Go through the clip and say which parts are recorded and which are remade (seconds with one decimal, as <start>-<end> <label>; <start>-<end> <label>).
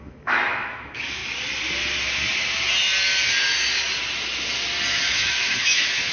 0.0-1.2 remade; 1.2-4.9 recorded; 4.9-6.1 remade